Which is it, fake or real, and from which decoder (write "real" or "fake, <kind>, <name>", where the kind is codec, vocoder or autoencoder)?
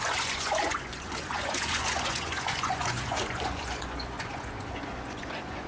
fake, vocoder, Vocos